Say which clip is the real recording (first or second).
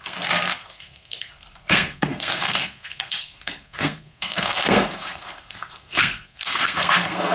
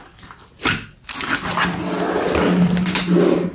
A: second